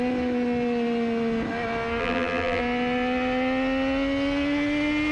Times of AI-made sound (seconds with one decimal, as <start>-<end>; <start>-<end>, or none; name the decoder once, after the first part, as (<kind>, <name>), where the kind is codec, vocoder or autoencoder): 2.0-2.6 (vocoder, BigVGAN v2)